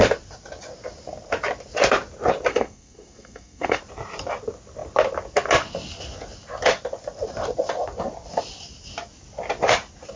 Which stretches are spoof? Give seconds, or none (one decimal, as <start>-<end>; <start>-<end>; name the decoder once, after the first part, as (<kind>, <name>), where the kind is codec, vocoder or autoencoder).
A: 2.5-3.8 (codec, SNAC)